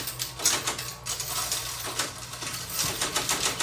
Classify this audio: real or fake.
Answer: real